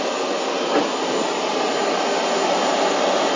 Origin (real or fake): real